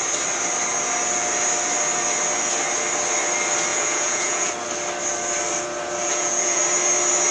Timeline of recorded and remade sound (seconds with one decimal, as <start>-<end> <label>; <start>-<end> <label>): 0.0-3.7 recorded; 3.7-4.5 remade; 4.5-6.0 recorded; 6.0-6.6 remade; 6.6-7.3 recorded